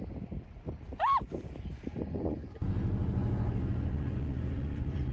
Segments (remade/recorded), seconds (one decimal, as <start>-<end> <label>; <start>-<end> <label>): 0.0-1.9 recorded; 1.9-5.1 remade